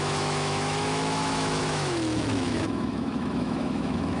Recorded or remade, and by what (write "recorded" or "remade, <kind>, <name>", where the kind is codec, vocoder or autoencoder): remade, autoencoder, DAC-VAE